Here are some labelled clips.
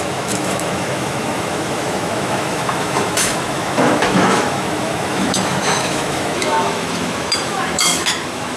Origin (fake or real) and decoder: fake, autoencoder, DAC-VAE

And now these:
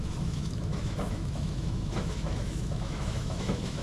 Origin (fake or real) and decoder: fake, autoencoder, DAC-VAE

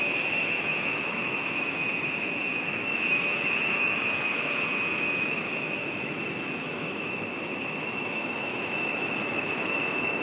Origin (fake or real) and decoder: fake, autoencoder, DAC-VAE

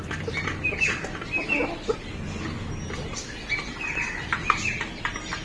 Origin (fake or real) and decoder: real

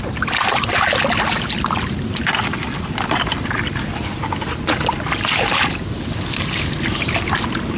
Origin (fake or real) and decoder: real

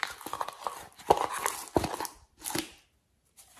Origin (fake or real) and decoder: real